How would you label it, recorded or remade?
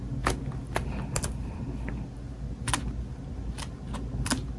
recorded